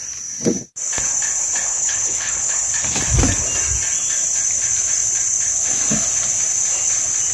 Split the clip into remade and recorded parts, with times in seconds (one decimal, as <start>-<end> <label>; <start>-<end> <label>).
0.0-1.7 recorded; 1.7-2.6 remade; 2.6-7.3 recorded